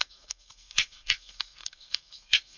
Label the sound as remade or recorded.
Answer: remade